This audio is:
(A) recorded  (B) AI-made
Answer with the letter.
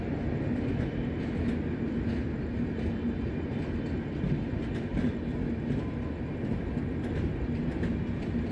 A